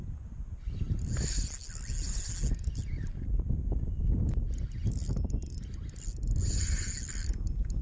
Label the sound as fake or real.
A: real